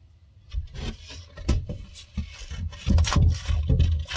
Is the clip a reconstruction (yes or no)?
no